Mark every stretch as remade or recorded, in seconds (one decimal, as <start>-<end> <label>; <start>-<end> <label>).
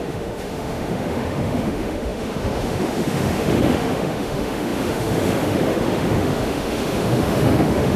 0.0-8.0 remade